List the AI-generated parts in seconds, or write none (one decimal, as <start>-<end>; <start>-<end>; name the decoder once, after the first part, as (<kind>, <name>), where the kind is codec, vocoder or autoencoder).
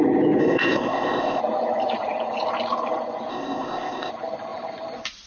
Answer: 0.4-1.4 (codec, ZipCodec); 3.3-4.1